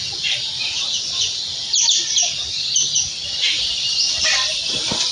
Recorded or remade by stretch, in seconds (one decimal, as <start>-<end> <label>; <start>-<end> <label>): 0.0-3.2 remade; 3.2-4.2 recorded; 4.2-5.1 remade